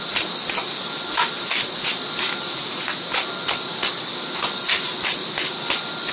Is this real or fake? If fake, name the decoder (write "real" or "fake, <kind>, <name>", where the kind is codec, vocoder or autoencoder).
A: real